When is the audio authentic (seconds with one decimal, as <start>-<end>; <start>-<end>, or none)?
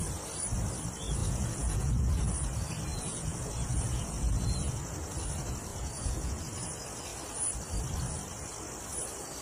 0.0-1.2; 2.3-2.9; 4.8-5.7; 6.4-9.4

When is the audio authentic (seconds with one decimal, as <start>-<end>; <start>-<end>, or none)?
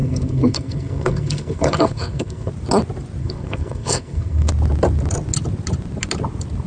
2.5-3.2; 4.5-6.7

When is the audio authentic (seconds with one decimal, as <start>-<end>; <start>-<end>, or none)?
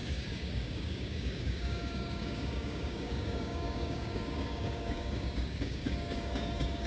none